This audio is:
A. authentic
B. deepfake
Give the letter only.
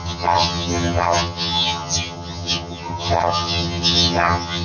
B